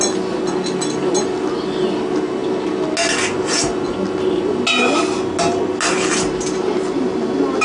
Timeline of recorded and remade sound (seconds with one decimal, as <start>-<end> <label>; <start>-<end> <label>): 0.0-7.6 recorded